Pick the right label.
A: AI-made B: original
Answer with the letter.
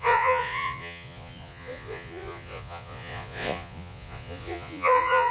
A